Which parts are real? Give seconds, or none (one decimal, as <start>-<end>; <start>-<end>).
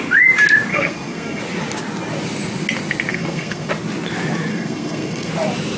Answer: 0.0-0.7; 1.4-3.1; 3.7-4.5; 5.3-5.8